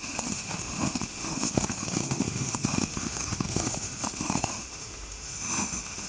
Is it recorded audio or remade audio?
remade